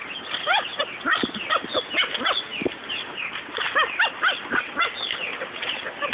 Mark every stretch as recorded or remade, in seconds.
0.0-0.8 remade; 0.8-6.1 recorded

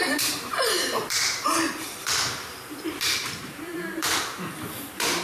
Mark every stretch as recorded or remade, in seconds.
0.0-5.2 remade

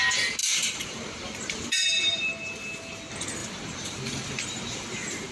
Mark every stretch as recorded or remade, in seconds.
0.0-0.4 recorded; 0.4-2.3 remade; 2.3-3.4 recorded; 3.4-5.3 remade

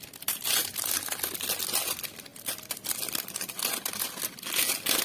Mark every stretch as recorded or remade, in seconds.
0.0-5.0 recorded